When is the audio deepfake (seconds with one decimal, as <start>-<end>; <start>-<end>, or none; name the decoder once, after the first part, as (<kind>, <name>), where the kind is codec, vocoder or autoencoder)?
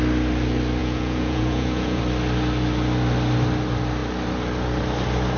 0.8-2.0 (vocoder, Vocos)